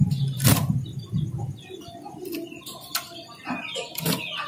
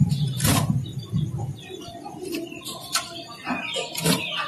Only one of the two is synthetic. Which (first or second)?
second